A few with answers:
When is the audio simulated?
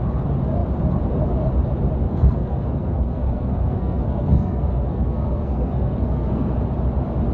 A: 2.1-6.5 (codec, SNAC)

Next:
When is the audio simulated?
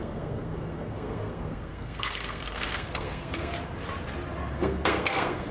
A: 0.0-3.5 (codec, SNAC); 4.5-5.5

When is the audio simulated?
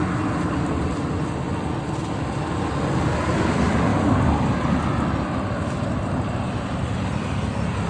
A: none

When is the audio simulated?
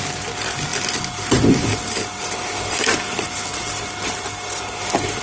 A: none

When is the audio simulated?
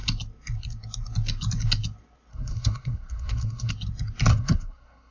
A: 2.3-3.7 (codec, SNAC); 4.3-5.1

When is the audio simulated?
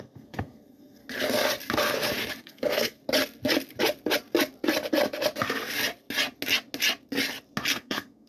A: 0.0-1.0 (codec, SNAC); 2.4-3.0; 7.7-8.3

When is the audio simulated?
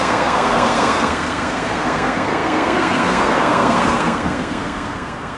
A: 0.0-5.4 (codec, SNAC)